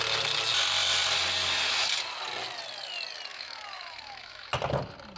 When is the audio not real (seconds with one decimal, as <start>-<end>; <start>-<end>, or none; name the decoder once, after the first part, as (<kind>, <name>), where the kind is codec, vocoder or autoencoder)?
3.3-4.5 (autoencoder, DAC-VAE)